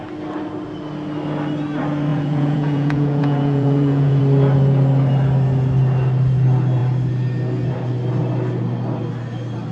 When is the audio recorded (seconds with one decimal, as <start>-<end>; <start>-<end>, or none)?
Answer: 0.0-2.1; 4.2-9.7